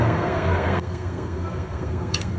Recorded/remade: remade